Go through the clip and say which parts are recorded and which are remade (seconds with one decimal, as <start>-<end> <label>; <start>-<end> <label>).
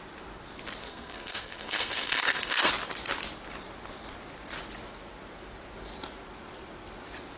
0.0-0.8 recorded; 0.8-2.7 remade; 2.7-7.4 recorded